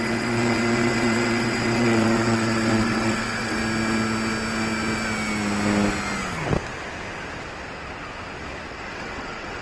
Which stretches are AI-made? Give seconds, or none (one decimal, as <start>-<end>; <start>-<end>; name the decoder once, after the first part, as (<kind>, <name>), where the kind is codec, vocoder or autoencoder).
0.0-3.6 (vocoder, WaveNeXt); 8.7-9.6